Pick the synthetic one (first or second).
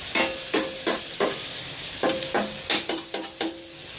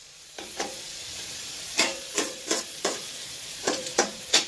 second